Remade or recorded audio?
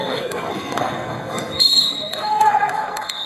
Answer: remade